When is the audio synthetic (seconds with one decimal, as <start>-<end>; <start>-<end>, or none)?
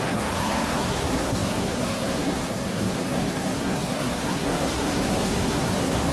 0.0-6.1